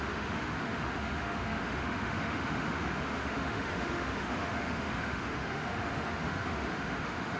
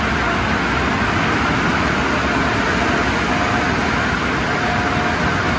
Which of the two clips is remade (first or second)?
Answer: first